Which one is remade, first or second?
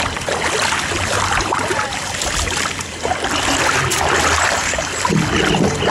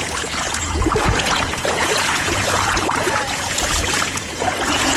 second